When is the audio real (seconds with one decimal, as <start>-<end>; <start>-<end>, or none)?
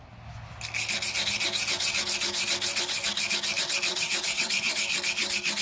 0.0-3.9; 4.7-5.6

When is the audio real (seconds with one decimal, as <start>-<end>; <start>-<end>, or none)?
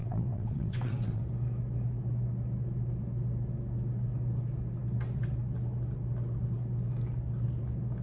1.2-8.0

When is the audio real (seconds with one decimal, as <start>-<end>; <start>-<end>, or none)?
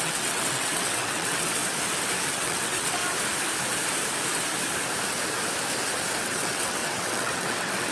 1.6-2.3; 3.0-6.2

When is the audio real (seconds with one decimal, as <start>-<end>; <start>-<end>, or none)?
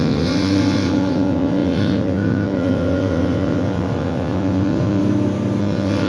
5.0-5.6